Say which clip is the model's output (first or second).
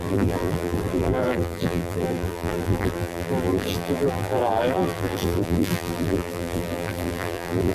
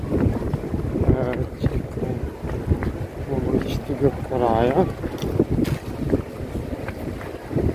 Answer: first